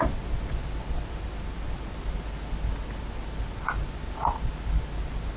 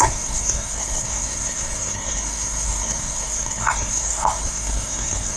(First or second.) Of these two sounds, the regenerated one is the second